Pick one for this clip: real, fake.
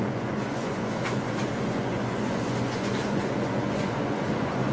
fake